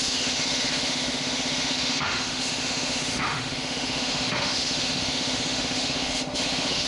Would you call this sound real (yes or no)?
no